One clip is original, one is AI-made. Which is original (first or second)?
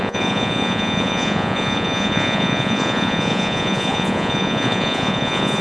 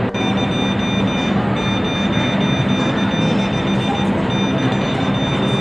second